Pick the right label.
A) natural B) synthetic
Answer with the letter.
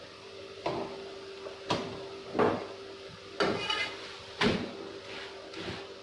A